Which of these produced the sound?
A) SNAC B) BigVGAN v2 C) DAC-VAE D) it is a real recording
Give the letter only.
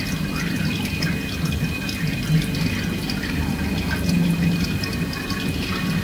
D